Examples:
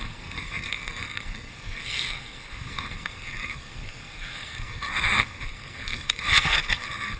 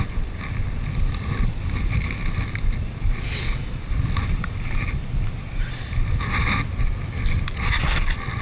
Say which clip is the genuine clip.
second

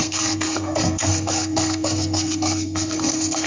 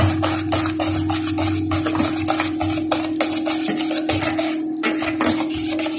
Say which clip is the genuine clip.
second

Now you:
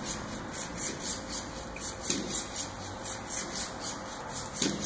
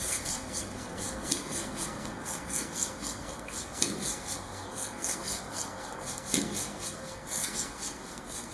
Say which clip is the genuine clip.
first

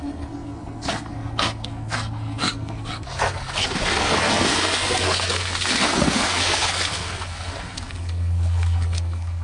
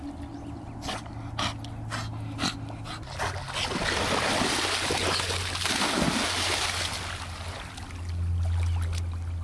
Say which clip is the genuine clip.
second